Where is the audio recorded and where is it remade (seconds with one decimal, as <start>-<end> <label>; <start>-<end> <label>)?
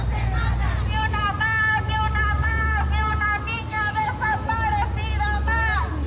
0.0-3.7 recorded; 3.7-4.5 remade; 4.5-6.1 recorded